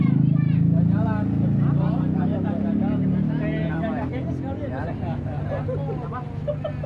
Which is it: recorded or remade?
recorded